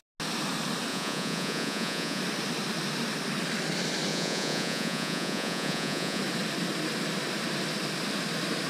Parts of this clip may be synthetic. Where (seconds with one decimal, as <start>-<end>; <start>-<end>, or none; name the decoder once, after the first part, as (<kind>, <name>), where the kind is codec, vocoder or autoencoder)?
0.9-2.2 (vocoder, Vocos); 4.1-6.2